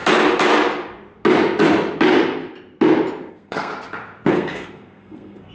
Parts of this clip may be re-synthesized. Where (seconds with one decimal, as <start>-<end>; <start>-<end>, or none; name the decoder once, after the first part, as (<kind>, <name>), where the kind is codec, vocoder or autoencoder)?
3.3-3.7 (codec, SNAC); 4.3-5.5